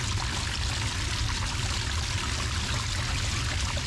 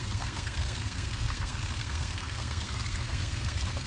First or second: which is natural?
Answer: first